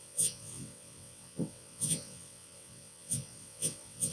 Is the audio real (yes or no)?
no